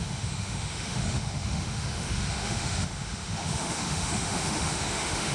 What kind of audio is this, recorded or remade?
remade